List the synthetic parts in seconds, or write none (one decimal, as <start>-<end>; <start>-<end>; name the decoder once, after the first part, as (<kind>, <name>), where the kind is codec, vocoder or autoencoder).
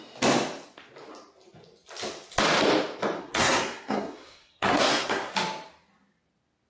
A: 3.2-5.3 (codec, SNAC)